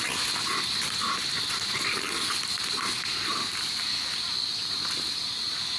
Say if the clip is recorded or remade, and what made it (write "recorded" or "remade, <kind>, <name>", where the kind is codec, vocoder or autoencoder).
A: recorded